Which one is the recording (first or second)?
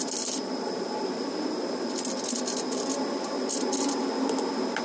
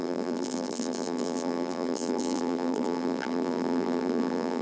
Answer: first